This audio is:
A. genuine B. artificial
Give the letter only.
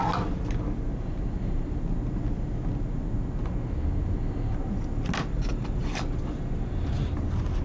A